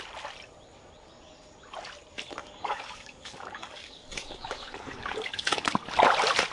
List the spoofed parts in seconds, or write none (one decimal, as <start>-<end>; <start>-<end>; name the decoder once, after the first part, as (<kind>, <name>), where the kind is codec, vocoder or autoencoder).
2.4-5.8 (codec, DAC)